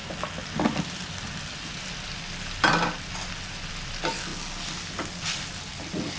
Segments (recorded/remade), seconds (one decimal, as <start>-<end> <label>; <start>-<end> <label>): 0.0-6.2 recorded

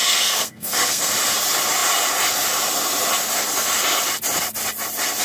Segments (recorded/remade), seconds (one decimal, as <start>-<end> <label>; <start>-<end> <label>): 0.0-1.1 remade; 1.1-5.2 recorded

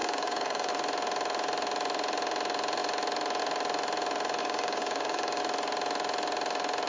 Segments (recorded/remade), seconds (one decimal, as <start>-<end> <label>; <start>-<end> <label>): 0.0-0.7 remade; 0.7-4.4 recorded; 4.4-5.4 remade; 5.4-6.9 recorded

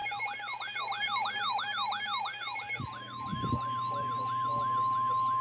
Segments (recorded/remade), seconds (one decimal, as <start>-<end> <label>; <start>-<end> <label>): 0.0-5.4 recorded

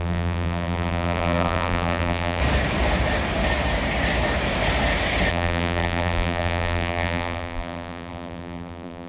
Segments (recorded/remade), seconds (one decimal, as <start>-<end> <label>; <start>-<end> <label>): 0.0-2.4 remade; 2.4-5.3 recorded; 5.3-9.1 remade